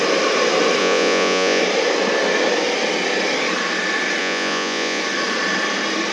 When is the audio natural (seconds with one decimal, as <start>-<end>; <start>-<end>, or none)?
0.0-0.8; 1.6-4.2; 5.0-6.1